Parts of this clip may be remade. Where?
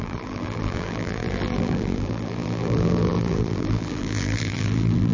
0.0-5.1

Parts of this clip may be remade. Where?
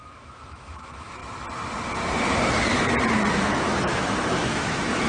0.0-1.2; 3.3-5.1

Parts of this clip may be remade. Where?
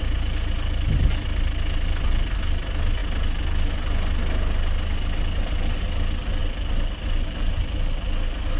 none